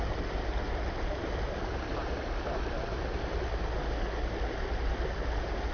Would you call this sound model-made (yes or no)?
no